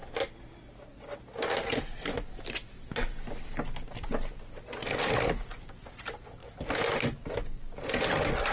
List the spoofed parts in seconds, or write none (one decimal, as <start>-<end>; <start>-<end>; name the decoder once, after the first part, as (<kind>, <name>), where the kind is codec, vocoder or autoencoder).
none